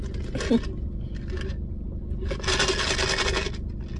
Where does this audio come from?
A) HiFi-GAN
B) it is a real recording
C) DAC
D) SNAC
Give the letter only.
B